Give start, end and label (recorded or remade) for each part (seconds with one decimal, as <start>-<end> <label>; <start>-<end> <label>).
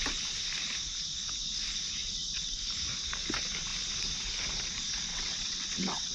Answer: 0.0-2.0 recorded; 2.0-2.6 remade; 2.6-5.1 recorded; 5.1-6.1 remade